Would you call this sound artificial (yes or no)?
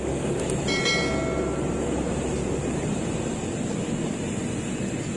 no